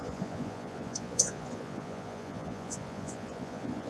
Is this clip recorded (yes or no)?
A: no